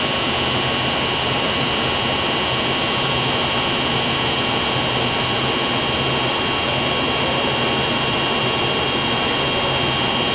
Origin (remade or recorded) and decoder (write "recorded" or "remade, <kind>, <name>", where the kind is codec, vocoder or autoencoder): recorded